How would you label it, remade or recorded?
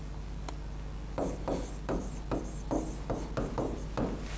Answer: recorded